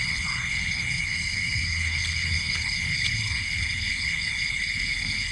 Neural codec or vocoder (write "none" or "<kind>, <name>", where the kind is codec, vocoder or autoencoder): codec, HILCodec